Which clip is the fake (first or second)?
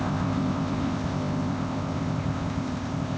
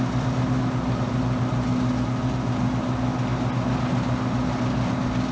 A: first